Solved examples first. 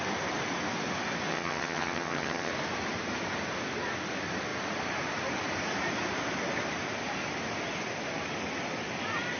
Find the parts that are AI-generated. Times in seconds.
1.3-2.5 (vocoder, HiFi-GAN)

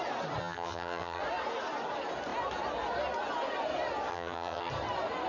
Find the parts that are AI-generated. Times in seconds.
0.4-1.2 (vocoder, HiFi-GAN); 4.1-4.7

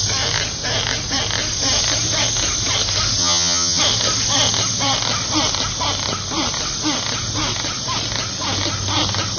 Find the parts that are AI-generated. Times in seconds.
3.2-3.8 (vocoder, HiFi-GAN)